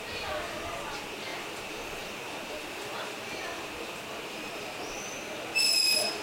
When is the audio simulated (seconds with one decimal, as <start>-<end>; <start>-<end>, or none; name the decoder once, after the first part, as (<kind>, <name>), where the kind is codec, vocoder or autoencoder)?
1.3-5.0 (vocoder, BigVGAN v2)